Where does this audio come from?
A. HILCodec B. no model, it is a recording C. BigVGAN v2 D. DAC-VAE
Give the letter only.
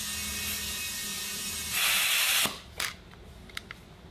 B